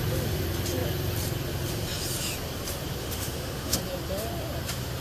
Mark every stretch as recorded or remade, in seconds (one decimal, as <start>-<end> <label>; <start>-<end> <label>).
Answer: 0.0-3.0 recorded; 3.0-3.8 remade; 3.8-5.0 recorded